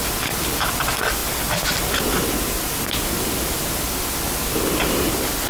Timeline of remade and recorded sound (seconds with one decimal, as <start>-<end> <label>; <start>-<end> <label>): 0.0-5.5 recorded